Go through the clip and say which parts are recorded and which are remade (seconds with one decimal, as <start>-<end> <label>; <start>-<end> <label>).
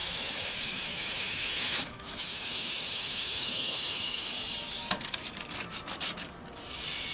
0.0-4.3 remade; 4.3-7.1 recorded